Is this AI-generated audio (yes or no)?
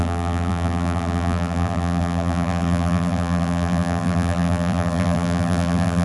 yes